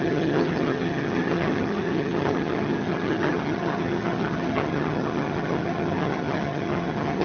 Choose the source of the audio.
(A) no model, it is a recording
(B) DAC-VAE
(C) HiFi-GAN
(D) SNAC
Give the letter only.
C